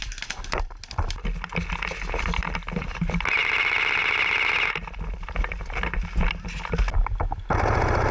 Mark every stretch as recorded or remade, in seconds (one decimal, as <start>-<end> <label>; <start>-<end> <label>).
0.0-8.1 recorded